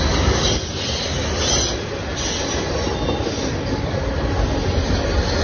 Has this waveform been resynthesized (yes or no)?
no